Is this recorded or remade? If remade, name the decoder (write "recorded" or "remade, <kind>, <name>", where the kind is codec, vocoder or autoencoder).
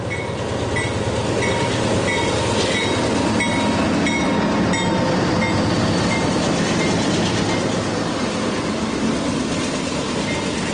recorded